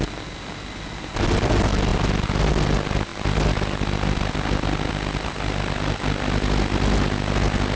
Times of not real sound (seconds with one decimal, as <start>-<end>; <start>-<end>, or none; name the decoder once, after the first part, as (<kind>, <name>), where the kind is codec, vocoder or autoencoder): none

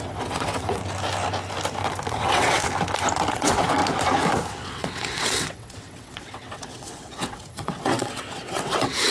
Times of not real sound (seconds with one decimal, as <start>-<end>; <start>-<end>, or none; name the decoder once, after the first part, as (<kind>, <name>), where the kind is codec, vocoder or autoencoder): 0.0-0.8 (vocoder, WaveNeXt); 2.1-2.6; 3.3-3.8; 4.5-9.1

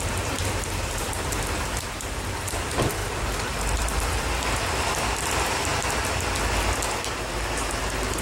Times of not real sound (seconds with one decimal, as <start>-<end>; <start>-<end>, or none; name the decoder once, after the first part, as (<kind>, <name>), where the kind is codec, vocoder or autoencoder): 0.0-5.7 (vocoder, BigVGAN v2); 7.3-8.2

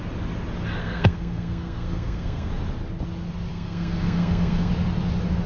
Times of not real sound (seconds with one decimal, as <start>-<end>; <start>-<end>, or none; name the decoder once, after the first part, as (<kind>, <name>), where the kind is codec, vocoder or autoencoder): 0.8-2.5 (codec, SNAC); 3.5-4.7

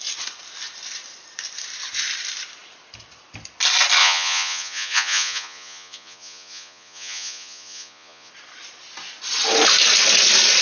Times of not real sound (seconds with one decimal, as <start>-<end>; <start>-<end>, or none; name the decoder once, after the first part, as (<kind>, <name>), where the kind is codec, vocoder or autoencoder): 4.0-8.3 (vocoder, Vocos)